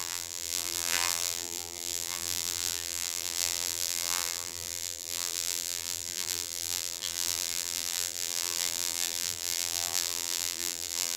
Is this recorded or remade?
remade